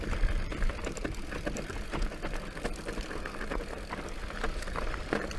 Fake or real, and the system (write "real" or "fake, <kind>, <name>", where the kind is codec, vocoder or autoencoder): real